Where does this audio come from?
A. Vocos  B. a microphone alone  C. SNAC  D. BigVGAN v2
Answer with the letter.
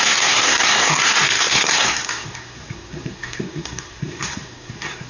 C